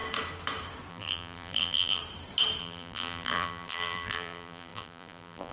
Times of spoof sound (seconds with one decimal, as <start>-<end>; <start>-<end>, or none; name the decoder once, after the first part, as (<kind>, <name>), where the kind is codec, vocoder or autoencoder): 0.9-2.0 (vocoder, BigVGAN v2); 2.6-5.5